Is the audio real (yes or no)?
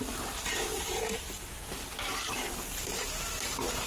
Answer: yes